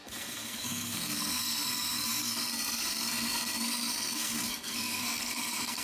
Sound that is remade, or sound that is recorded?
remade